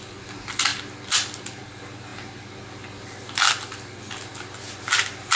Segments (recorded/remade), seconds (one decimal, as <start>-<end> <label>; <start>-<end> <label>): 0.0-5.4 recorded